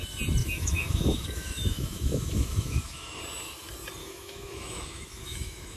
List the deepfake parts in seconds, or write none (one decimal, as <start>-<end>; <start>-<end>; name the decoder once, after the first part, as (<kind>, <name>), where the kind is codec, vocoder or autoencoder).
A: 0.4-3.2 (autoencoder, DAC-VAE); 4.0-5.8